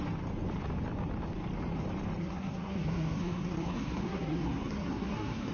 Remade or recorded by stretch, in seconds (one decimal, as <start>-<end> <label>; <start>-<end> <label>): 0.0-2.2 recorded; 2.2-5.5 remade